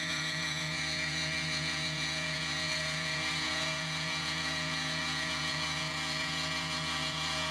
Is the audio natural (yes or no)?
no